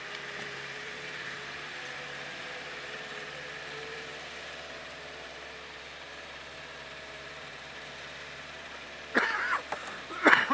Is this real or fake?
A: fake